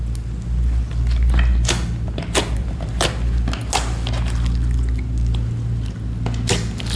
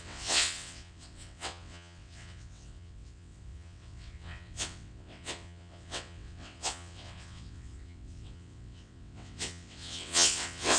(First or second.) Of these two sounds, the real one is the first